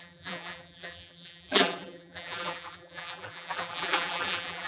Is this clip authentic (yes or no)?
no